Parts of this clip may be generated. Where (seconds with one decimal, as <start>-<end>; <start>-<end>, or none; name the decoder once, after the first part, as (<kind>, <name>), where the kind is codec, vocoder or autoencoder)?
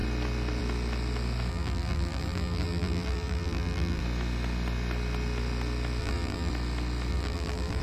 1.5-4.0 (vocoder, BigVGAN v2); 6.0-6.5; 7.1-7.8